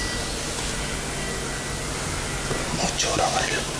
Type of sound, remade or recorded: recorded